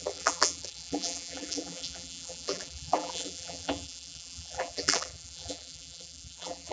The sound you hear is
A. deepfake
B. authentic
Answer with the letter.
A